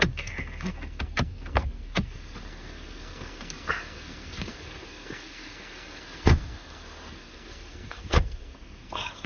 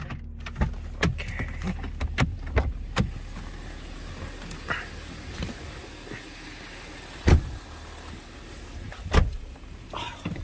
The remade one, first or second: first